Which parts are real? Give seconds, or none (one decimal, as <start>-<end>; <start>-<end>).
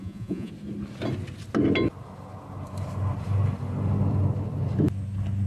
0.5-5.5